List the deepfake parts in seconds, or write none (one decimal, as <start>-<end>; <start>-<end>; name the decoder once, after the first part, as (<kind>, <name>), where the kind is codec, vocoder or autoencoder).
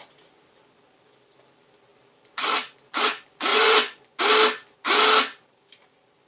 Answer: 3.5-4.2 (vocoder, Vocos)